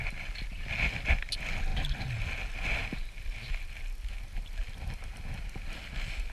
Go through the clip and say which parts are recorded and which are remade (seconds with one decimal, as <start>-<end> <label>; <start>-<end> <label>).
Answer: 0.0-6.3 recorded

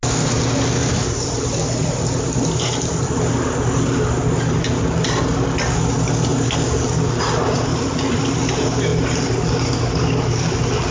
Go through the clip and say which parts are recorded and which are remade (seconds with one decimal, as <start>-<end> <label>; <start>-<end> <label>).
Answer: 0.0-0.8 recorded; 0.8-3.1 remade; 3.1-6.3 recorded; 6.3-7.9 remade; 7.9-10.9 recorded

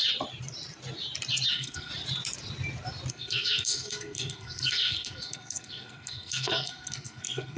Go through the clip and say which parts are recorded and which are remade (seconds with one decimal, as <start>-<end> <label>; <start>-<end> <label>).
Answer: 0.0-1.5 recorded; 1.5-1.9 remade; 1.9-3.1 recorded; 3.1-7.6 remade

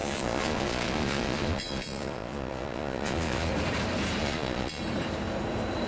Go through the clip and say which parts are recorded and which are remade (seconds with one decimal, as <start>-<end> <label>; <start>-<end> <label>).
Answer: 0.0-3.5 remade; 3.5-4.2 recorded; 4.2-4.8 remade; 4.8-5.9 recorded

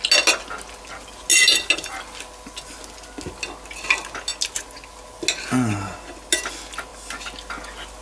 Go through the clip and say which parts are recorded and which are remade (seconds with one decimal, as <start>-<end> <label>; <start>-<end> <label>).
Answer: 0.0-8.0 recorded

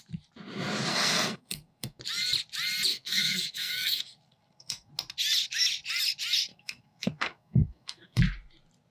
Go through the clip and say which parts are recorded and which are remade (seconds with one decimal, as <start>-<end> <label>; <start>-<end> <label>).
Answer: 0.0-0.9 recorded; 0.9-2.0 remade; 2.0-2.9 recorded; 2.9-4.9 remade; 4.9-6.5 recorded; 6.5-8.2 remade; 8.2-8.9 recorded